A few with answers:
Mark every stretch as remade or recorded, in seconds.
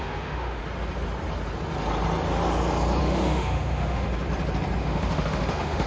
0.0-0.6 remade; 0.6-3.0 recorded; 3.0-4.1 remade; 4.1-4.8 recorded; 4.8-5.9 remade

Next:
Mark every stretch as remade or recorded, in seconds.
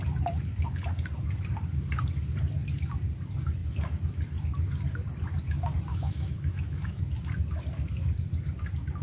0.0-5.9 recorded; 5.9-7.0 remade; 7.0-9.0 recorded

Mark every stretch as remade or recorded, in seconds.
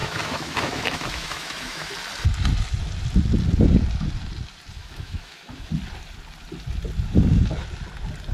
0.0-1.9 remade; 1.9-4.8 recorded; 4.8-5.7 remade; 5.7-8.3 recorded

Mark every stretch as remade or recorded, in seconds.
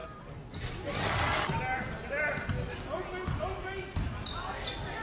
0.0-5.0 recorded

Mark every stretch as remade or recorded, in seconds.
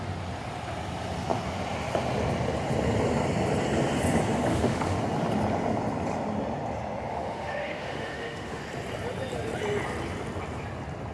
0.0-4.5 recorded; 4.5-5.0 remade; 5.0-7.1 recorded; 7.1-8.6 remade; 8.6-11.1 recorded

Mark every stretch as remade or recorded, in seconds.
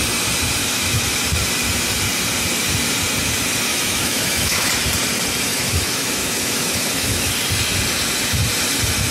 0.0-0.6 recorded; 0.6-1.2 remade; 1.2-3.7 recorded; 3.7-4.7 remade; 4.7-5.5 recorded; 5.5-7.3 remade; 7.3-9.1 recorded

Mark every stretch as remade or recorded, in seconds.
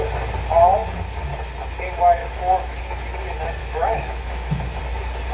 0.0-2.2 recorded; 2.2-2.8 remade; 2.8-3.6 recorded; 3.6-4.8 remade; 4.8-5.3 recorded